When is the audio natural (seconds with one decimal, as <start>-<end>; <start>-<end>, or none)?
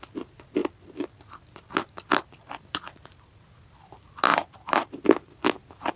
0.0-0.6; 2.8-4.3; 4.9-6.0